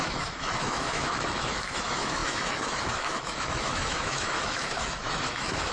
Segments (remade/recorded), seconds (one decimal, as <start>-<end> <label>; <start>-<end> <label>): 0.0-5.7 remade